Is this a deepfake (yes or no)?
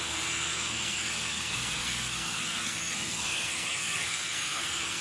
yes